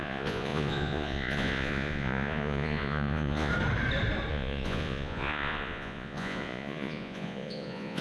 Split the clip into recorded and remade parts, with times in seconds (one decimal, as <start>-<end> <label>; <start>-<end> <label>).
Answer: 0.0-3.5 remade; 3.5-4.3 recorded; 4.3-8.0 remade